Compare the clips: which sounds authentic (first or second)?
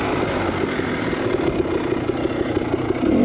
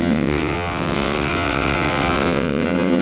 first